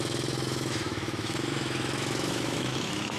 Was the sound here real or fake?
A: fake